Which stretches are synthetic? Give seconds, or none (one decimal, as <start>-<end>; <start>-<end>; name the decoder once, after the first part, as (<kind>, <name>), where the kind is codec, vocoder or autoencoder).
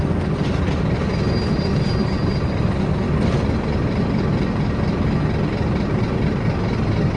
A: 2.0-2.5 (vocoder, BigVGAN v2)